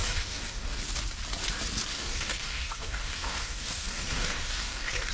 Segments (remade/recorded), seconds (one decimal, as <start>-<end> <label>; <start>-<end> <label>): 0.0-0.8 remade; 0.8-1.9 recorded; 1.9-5.1 remade